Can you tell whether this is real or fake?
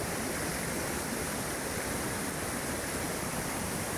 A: fake